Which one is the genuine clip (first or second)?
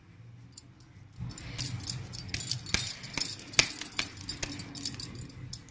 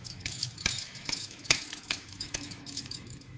first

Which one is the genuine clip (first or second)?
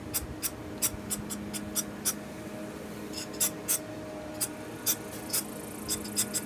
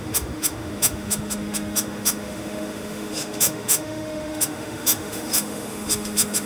first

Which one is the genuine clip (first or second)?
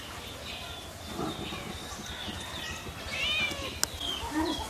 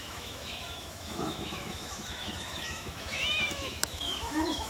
first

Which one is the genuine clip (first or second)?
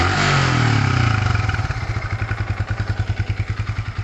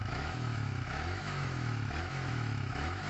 first